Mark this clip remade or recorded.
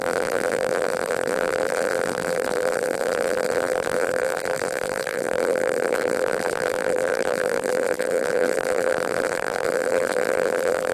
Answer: remade